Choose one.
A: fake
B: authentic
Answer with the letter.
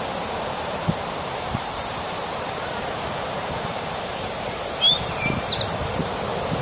A